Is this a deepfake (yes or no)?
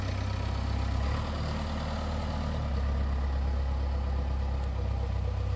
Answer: no